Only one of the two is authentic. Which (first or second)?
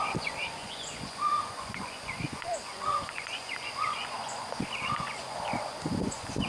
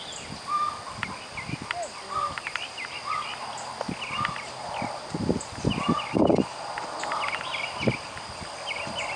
second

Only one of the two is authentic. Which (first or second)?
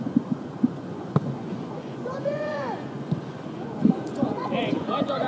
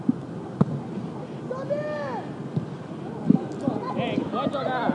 second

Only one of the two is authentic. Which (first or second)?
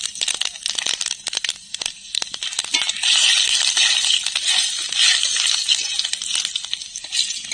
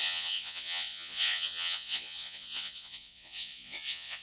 first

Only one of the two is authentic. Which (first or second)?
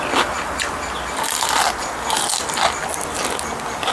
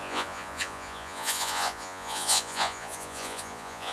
first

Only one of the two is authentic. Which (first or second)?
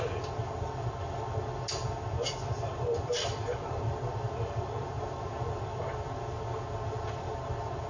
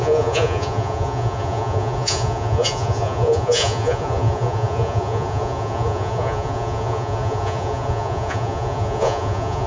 first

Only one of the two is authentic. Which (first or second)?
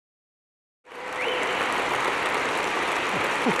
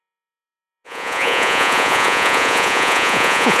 first